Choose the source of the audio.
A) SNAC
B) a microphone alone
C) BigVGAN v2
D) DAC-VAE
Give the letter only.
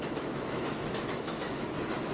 D